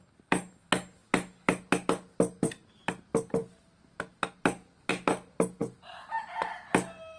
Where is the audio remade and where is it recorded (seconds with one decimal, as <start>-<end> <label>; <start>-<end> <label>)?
0.0-7.2 recorded